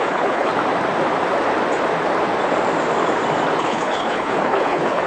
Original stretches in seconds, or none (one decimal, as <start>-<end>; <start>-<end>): 0.5-3.6

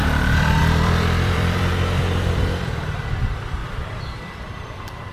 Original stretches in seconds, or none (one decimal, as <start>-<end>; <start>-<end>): 0.0-0.6; 3.6-4.3

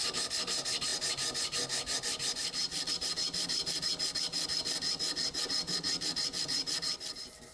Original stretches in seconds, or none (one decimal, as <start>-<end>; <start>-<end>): 0.0-7.5

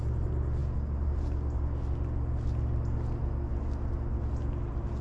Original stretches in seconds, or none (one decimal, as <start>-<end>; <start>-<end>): 0.0-5.0

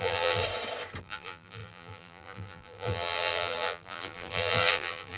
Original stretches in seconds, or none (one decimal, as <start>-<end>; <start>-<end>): 0.4-1.0

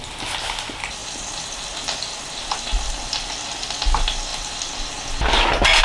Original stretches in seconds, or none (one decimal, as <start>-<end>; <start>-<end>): 0.0-5.8

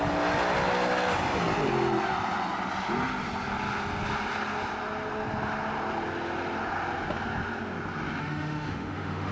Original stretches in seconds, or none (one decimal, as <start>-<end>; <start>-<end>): 0.0-8.2

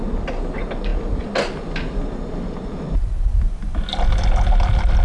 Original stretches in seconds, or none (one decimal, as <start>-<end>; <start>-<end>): 0.0-5.0